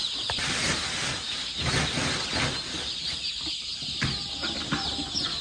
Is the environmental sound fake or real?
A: real